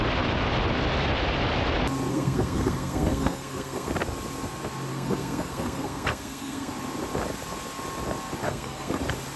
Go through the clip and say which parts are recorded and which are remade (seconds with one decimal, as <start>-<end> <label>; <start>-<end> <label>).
0.0-2.1 recorded; 2.1-3.9 remade; 3.9-4.9 recorded; 4.9-6.7 remade; 6.7-8.4 recorded; 8.4-9.0 remade; 9.0-9.4 recorded